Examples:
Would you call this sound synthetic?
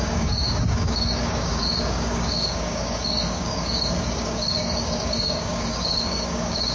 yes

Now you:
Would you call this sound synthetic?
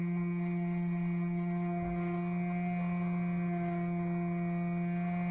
no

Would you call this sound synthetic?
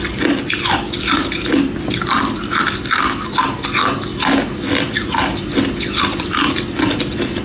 no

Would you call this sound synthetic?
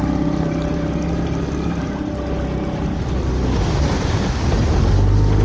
no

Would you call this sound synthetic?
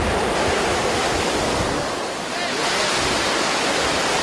no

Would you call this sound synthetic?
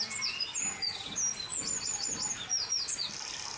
no